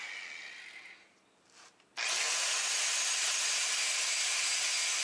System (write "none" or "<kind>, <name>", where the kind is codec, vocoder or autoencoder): none